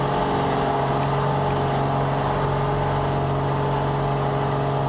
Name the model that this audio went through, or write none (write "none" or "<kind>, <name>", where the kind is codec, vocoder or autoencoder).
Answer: none